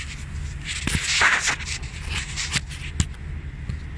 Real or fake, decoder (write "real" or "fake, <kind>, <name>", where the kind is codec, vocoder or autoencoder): real